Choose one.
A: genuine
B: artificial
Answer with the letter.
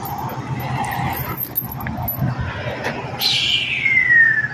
A